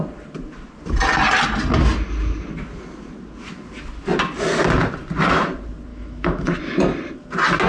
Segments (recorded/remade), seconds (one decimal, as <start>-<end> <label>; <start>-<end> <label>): 0.0-5.9 recorded; 5.9-6.6 remade; 6.6-7.7 recorded